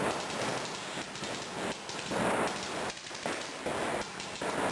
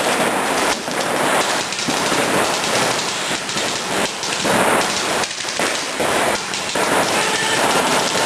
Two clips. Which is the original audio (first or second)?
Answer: first